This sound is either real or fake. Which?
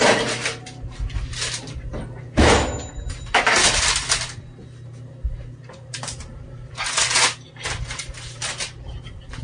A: real